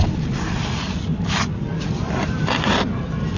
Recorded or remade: recorded